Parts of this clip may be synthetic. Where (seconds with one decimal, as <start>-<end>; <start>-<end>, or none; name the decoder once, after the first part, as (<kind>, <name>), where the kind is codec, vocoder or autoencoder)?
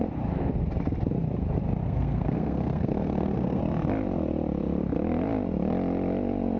1.8-3.6 (codec, SNAC)